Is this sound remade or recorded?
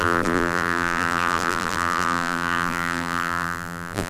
remade